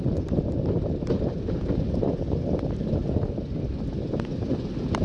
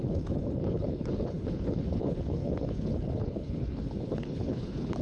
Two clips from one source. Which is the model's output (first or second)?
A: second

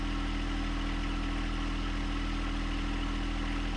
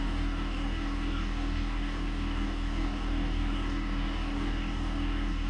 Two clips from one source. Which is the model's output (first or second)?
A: second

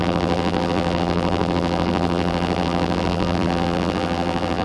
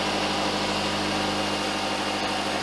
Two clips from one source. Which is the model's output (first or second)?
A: first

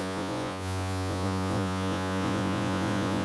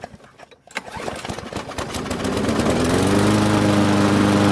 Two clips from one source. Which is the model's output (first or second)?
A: first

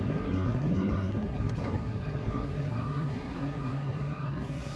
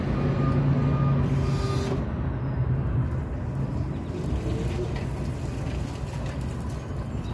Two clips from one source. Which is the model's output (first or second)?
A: first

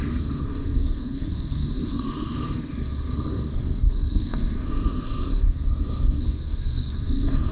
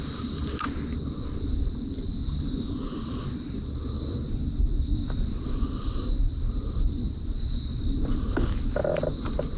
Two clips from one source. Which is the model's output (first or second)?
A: first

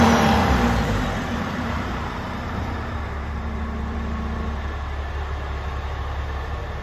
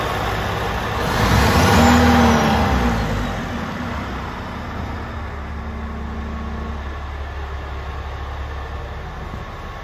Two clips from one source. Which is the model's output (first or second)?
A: first